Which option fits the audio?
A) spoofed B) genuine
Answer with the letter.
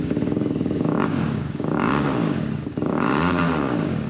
A